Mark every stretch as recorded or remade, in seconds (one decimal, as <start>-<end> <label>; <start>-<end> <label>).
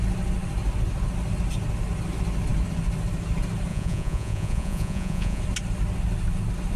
0.0-3.7 recorded; 3.7-5.4 remade; 5.4-6.8 recorded